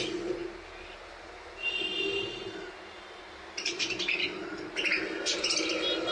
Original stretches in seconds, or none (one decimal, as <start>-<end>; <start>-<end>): 0.0-6.1